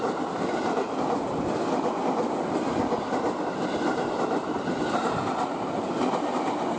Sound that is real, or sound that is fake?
real